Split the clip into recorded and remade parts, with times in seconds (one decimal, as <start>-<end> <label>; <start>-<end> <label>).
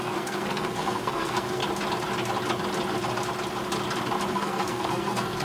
0.0-1.6 remade; 1.6-4.3 recorded; 4.3-5.4 remade